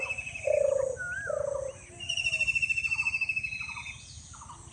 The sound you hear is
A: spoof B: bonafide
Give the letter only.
B